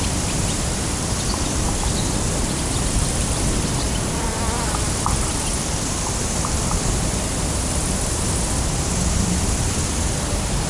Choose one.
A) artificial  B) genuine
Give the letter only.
A